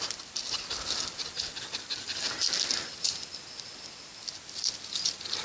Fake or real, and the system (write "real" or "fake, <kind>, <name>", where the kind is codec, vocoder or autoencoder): real